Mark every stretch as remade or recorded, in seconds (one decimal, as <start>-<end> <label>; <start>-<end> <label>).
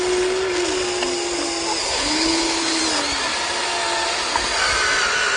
0.0-1.8 recorded; 1.8-2.8 remade; 2.8-5.4 recorded